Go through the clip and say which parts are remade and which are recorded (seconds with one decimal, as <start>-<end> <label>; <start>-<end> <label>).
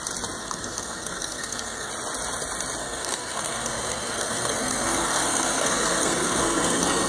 0.0-0.4 recorded; 0.4-1.9 remade; 1.9-2.8 recorded; 2.8-7.1 remade